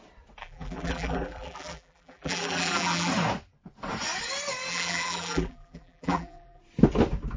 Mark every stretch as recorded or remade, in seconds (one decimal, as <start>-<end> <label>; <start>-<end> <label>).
0.0-0.4 recorded; 0.4-3.1 remade; 3.1-4.7 recorded; 4.7-6.6 remade; 6.6-7.4 recorded